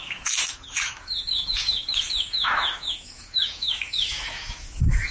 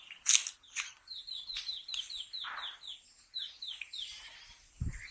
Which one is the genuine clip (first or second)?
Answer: second